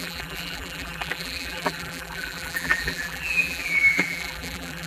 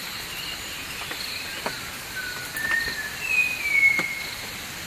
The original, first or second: second